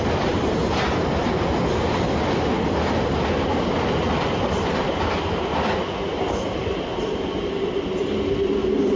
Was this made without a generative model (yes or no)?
yes